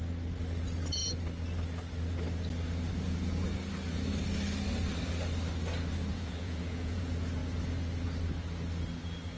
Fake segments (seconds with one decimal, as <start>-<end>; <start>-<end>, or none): 6.1-7.0